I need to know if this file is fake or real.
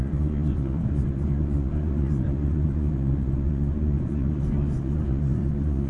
fake